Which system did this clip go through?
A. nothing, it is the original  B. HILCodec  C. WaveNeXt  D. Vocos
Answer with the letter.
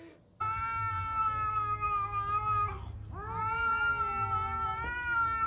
A